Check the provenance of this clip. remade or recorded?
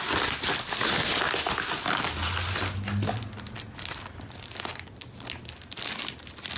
recorded